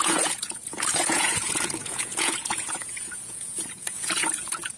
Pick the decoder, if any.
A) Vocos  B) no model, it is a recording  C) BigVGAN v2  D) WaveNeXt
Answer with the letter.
A